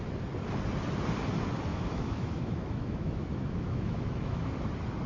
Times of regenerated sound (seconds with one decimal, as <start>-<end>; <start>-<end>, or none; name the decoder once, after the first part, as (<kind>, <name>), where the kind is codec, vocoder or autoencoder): 1.7-4.5 (autoencoder, DAC-VAE)